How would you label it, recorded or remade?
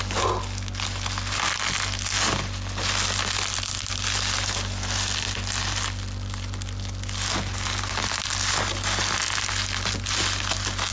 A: recorded